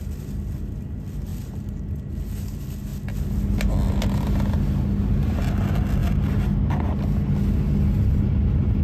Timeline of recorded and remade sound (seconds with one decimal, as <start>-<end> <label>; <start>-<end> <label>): 0.0-8.8 recorded

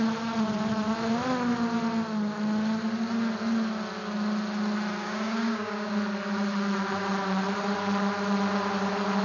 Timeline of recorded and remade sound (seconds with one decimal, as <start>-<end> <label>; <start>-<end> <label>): 0.0-5.0 recorded; 5.0-5.9 remade; 5.9-9.2 recorded